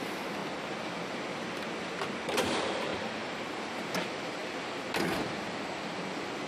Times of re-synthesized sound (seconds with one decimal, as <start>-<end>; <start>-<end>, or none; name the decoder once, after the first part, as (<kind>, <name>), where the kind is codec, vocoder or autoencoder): none